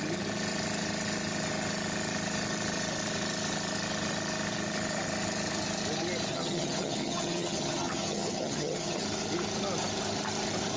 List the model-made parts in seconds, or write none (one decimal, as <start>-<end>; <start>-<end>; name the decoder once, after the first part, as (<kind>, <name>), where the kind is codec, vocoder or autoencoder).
6.3-9.0 (vocoder, HiFi-GAN)